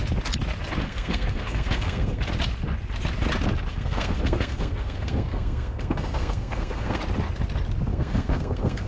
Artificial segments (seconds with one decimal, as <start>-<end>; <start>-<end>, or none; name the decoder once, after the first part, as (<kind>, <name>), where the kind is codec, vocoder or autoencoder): 0.8-2.2 (codec, SNAC); 3.7-7.0; 7.9-8.9